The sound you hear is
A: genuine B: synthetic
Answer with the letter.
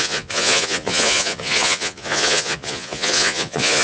B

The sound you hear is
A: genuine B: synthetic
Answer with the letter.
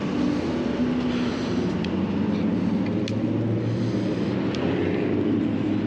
A